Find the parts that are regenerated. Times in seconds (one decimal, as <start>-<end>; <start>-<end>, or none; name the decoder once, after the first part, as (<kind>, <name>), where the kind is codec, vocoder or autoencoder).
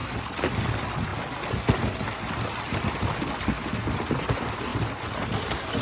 0.0-0.6 (vocoder, BigVGAN v2)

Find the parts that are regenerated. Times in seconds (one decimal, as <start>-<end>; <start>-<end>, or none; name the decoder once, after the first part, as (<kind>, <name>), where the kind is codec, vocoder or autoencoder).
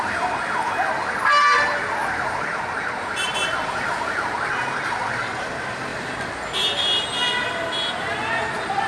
none